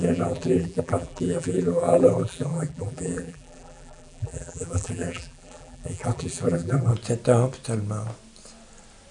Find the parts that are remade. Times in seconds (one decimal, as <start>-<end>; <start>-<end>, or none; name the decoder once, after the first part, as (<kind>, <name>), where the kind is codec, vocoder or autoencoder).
0.0-6.9 (vocoder, BigVGAN v2)